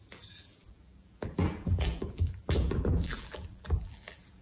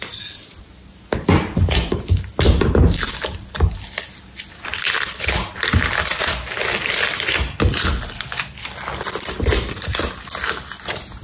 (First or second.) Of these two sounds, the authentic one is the second